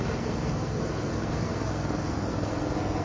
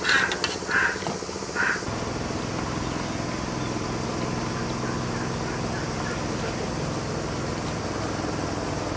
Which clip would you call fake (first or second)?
first